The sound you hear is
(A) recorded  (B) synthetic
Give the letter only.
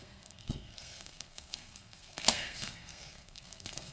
B